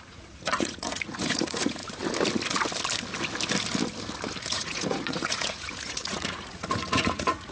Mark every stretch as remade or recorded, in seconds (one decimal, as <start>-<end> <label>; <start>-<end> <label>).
0.0-1.8 remade; 1.8-4.4 recorded; 4.4-7.5 remade